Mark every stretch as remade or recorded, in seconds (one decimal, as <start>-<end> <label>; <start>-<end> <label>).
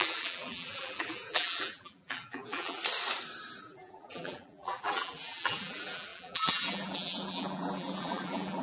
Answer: 0.0-2.8 remade; 2.8-3.6 recorded; 3.6-8.6 remade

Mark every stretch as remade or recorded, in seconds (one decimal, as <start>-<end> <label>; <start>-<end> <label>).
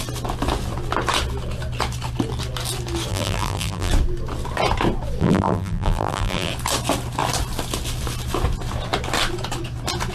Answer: 0.0-3.1 recorded; 3.1-3.9 remade; 3.9-5.2 recorded; 5.2-6.5 remade; 6.5-10.1 recorded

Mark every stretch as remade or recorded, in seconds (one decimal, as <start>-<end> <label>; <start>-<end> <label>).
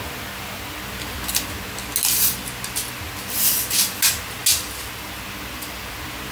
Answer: 0.0-6.3 recorded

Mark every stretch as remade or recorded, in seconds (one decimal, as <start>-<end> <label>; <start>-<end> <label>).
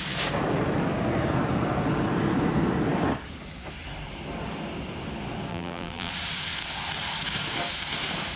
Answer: 0.0-5.5 recorded; 5.5-6.1 remade; 6.1-8.4 recorded